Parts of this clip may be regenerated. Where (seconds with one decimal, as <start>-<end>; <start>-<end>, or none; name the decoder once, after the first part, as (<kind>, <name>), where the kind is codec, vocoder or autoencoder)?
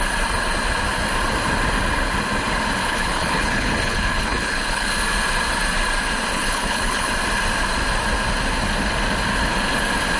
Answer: 2.8-4.9 (codec, HILCodec); 6.3-7.1